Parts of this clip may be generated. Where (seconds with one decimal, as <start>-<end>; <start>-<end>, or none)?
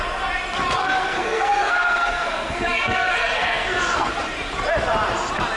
0.8-4.1